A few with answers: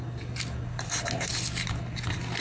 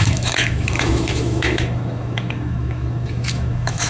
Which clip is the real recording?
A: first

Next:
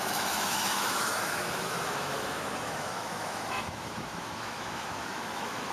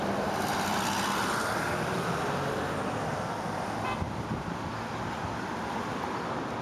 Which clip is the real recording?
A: second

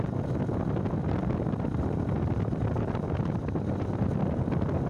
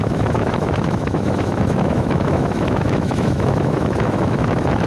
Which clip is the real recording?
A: first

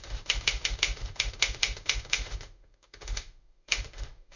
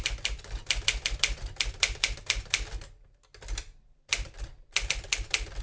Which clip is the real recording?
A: second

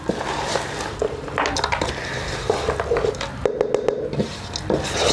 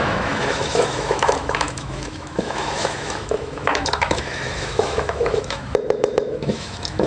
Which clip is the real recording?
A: first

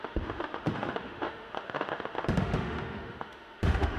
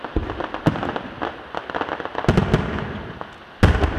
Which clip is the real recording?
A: second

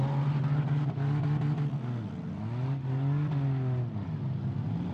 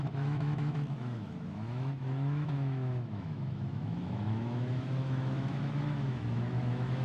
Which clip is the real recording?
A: first